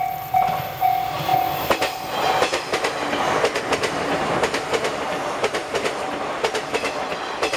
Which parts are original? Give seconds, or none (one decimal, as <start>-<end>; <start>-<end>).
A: 0.0-5.6